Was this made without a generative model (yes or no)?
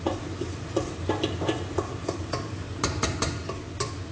yes